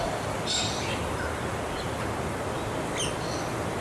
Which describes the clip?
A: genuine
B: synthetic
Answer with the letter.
A